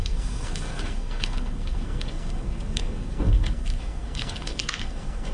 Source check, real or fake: fake